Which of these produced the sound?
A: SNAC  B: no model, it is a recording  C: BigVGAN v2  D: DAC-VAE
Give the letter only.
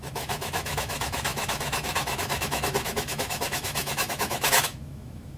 D